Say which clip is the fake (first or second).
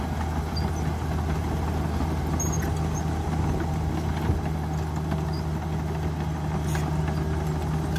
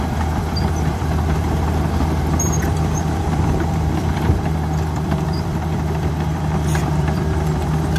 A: second